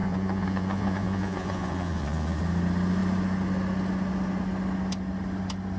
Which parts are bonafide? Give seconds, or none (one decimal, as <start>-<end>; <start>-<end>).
2.4-5.8